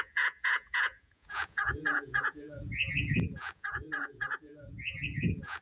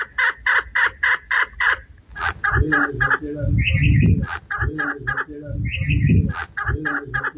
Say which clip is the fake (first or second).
first